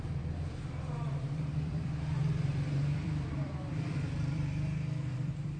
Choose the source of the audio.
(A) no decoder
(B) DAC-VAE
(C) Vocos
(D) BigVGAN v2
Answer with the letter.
D